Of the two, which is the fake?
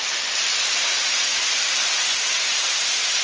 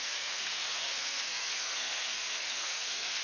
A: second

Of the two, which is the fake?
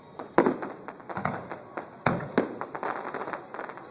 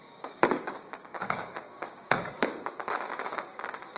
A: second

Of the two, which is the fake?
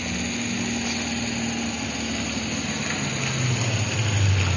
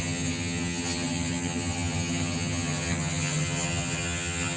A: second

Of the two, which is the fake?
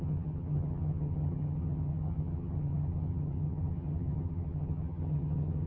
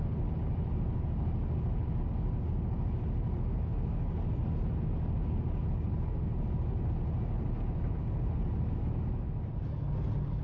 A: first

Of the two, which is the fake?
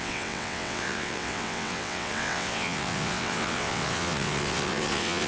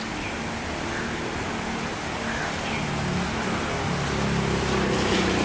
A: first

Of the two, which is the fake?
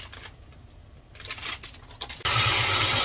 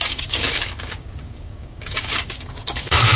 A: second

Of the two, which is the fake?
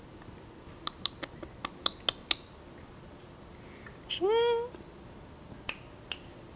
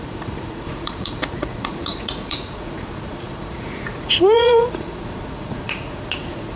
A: second